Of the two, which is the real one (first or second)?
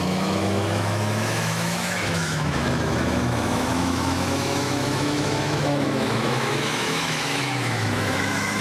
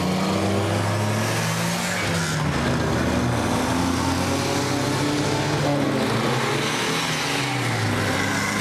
second